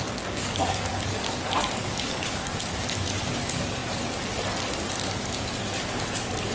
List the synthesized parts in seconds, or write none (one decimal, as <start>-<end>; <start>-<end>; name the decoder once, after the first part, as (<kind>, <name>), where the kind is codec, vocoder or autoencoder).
0.0-3.8 (codec, DAC); 4.9-6.5